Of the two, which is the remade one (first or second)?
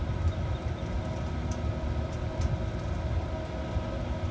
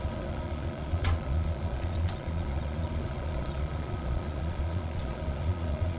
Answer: second